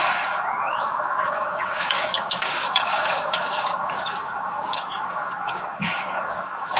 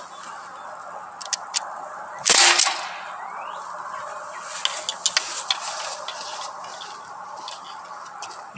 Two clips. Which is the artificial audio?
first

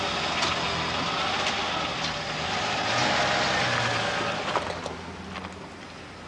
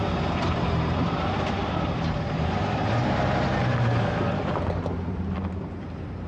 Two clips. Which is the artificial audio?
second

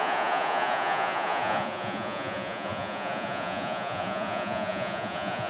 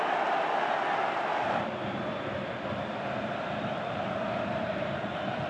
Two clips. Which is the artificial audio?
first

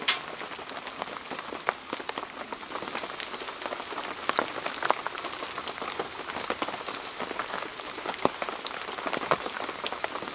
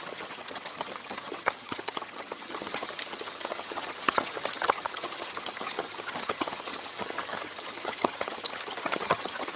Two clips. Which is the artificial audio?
second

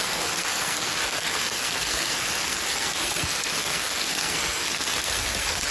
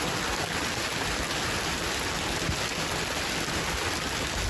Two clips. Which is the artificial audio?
first